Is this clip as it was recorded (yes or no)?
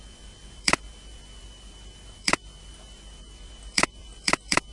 no